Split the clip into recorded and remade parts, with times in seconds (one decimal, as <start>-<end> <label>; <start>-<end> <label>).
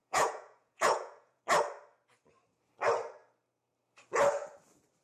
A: 0.0-1.4 remade; 1.4-5.0 recorded